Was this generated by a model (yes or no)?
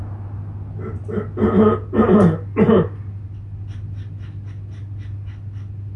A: no